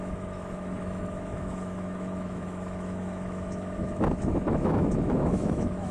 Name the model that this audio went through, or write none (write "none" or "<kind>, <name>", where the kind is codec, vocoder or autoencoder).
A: autoencoder, DAC-VAE